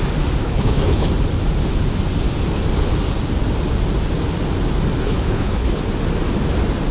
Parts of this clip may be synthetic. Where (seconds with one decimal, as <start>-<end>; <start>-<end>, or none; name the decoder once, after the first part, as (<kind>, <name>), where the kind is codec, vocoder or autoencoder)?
0.4-1.1 (codec, HILCodec); 5.0-5.8